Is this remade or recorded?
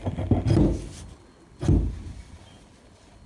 recorded